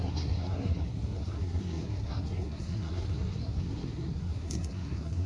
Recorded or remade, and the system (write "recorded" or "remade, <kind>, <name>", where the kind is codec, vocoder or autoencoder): remade, codec, SNAC